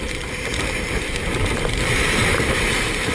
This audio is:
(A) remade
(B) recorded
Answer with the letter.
A